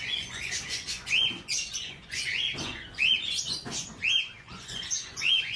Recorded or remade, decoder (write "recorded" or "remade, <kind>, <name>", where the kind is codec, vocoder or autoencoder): remade, vocoder, Vocos